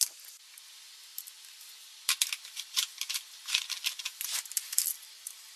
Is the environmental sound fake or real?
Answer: real